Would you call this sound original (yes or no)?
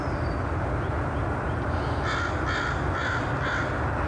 yes